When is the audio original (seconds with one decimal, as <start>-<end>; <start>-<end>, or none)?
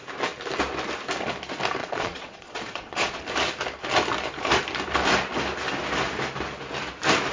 0.0-1.8; 3.2-7.3